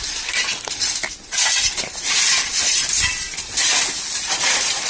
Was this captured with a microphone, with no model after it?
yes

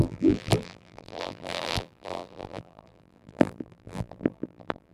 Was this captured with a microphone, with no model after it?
no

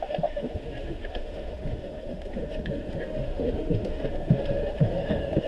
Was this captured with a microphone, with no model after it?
no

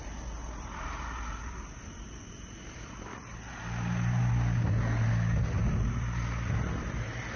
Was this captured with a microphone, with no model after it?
yes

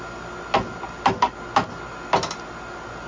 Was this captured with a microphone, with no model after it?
yes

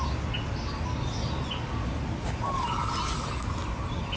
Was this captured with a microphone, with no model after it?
yes